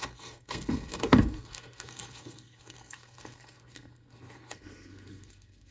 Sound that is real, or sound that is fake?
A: fake